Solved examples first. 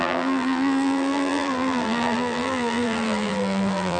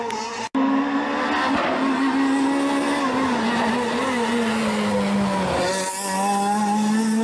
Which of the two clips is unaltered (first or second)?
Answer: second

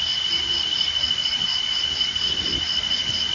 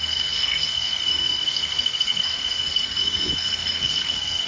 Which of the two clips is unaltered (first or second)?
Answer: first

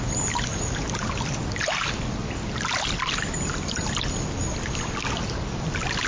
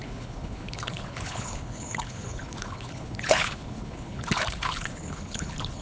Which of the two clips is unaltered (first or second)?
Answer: first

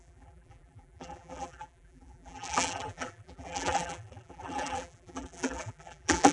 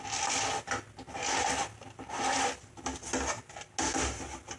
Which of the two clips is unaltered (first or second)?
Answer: second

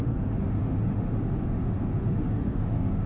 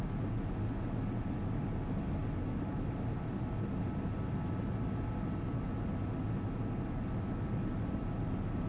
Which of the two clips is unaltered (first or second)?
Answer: second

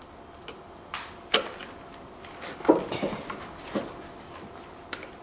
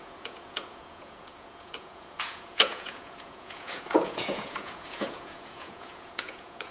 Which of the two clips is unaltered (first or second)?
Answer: first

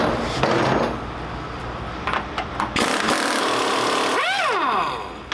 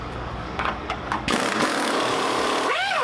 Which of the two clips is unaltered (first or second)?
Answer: first